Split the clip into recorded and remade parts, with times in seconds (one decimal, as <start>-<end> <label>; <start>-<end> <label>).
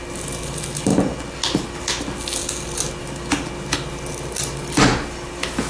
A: 0.0-5.7 recorded